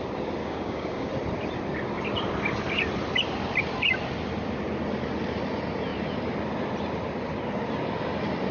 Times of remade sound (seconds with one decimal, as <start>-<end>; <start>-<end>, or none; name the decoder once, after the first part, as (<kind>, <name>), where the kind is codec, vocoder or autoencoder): 0.4-1.1 (codec, DAC)